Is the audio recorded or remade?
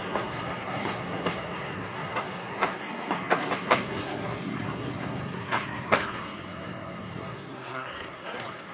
remade